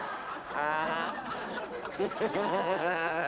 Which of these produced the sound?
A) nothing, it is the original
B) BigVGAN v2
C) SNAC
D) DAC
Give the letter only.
D